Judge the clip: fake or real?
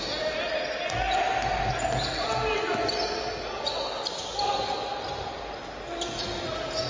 real